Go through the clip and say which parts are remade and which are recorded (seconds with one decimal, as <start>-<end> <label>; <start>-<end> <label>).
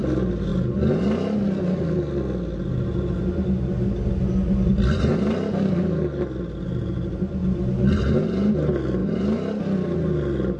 0.0-10.6 recorded